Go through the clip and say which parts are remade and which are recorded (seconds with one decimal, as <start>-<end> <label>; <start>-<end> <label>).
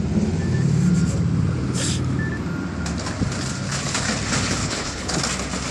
0.0-4.6 recorded; 4.6-5.2 remade; 5.2-5.7 recorded